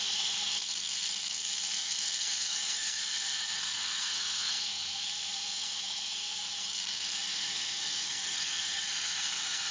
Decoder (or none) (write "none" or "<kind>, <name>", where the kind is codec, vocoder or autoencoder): codec, SNAC